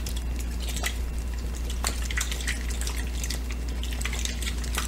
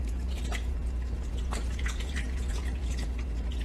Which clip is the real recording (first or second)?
first